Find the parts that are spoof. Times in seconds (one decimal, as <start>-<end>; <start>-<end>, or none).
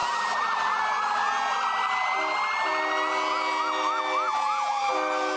0.0-0.8